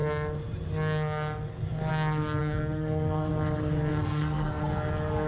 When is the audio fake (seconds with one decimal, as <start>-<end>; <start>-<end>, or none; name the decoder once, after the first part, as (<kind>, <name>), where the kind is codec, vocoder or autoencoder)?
2.4-3.3 (codec, SNAC); 3.9-4.6

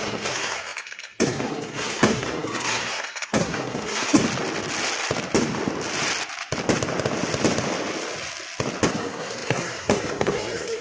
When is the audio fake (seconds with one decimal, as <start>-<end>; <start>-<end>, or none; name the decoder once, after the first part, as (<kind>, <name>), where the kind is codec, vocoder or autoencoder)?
0.0-4.2 (codec, SNAC); 8.9-10.8

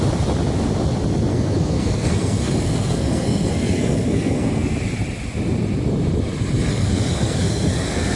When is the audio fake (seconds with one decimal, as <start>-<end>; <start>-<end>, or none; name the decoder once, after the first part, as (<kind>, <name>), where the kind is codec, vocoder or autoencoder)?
1.3-4.7 (codec, SNAC); 6.7-8.2

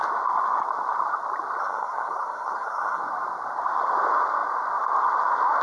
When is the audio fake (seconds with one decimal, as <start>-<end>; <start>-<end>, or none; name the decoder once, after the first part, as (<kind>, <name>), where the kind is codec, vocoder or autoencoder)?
1.6-3.0 (codec, SNAC)

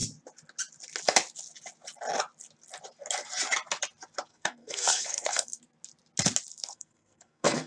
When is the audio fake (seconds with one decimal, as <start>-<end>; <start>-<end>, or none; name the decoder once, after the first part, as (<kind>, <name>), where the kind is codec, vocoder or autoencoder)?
4.3-5.6 (codec, SNAC); 6.5-7.7

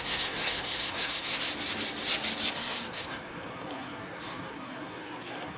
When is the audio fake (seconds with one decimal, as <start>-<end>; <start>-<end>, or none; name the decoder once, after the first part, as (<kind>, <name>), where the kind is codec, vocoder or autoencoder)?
0.0-1.5 (codec, SNAC); 2.5-5.6

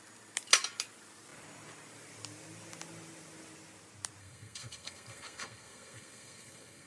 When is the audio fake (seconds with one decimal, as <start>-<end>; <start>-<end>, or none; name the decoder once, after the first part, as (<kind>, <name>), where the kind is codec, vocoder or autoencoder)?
4.2-6.9 (codec, SNAC)

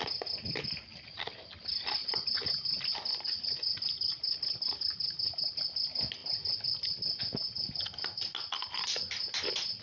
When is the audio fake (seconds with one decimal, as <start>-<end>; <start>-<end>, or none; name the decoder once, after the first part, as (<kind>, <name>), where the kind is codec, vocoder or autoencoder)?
none